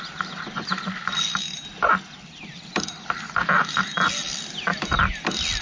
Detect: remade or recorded recorded